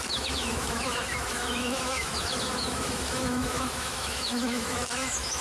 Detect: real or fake fake